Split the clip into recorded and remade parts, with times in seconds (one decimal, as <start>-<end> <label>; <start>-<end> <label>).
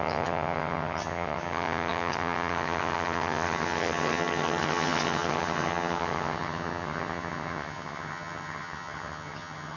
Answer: 0.0-9.8 remade